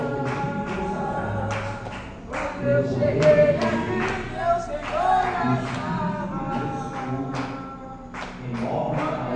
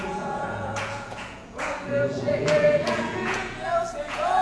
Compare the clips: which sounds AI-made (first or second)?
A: second